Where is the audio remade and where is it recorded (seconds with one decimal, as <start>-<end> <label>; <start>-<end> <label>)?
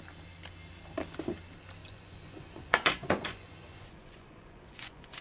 0.0-1.8 recorded; 1.8-5.2 remade